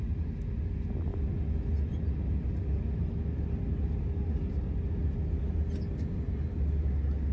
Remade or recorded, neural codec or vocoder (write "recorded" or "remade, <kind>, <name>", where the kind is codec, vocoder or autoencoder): recorded